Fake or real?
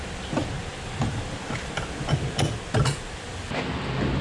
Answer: real